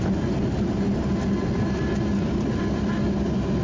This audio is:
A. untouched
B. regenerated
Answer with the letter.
A